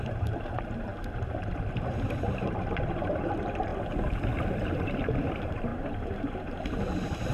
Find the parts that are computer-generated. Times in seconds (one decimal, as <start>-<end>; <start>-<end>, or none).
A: 0.0-0.9; 1.7-3.7; 4.5-7.3